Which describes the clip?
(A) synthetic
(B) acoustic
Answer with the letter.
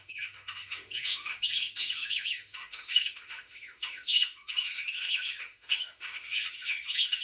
A